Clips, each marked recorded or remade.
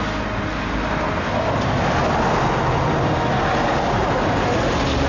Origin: recorded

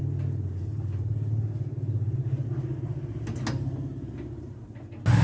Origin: recorded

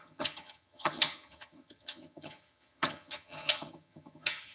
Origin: remade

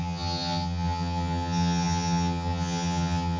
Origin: remade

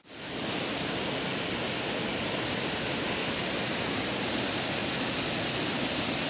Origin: recorded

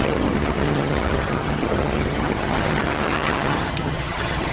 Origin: remade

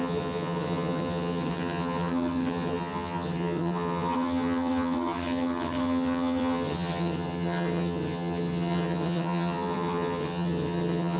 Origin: remade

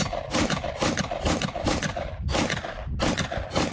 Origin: recorded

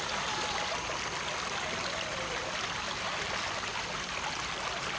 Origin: recorded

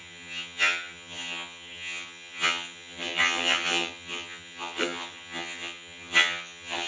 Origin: remade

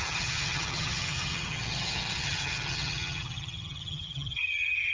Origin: remade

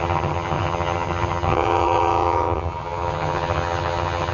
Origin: remade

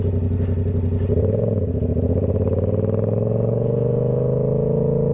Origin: recorded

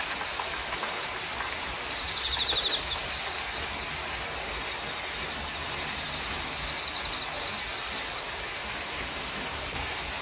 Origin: recorded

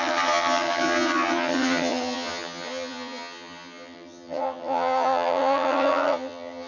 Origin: remade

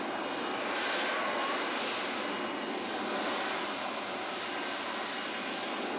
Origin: recorded